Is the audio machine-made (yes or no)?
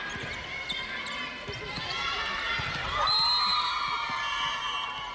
no